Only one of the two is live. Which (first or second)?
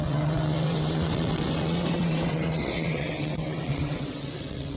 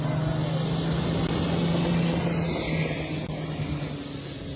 second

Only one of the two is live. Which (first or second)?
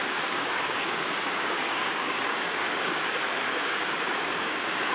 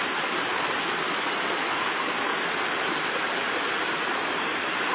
second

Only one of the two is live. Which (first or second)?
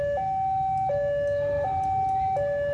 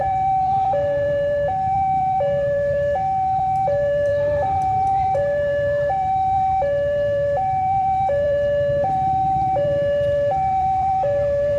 first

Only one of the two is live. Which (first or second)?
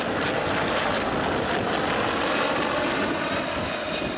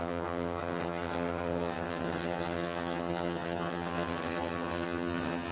first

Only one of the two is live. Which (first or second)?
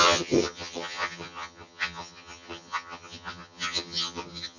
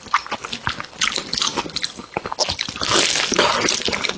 second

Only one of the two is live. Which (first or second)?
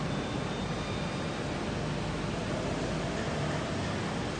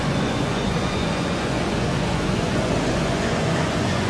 first